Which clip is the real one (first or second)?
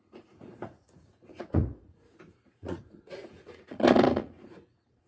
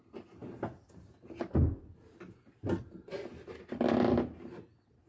second